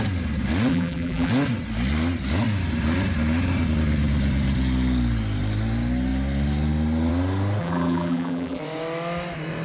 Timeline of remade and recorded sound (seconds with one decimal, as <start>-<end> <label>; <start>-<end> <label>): 0.0-0.7 recorded; 0.7-1.3 remade; 1.3-7.6 recorded; 7.6-8.6 remade; 8.6-9.6 recorded